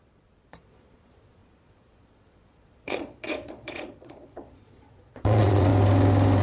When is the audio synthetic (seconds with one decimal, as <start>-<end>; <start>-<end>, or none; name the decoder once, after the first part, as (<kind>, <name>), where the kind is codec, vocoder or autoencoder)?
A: 0.0-5.7 (vocoder, Vocos)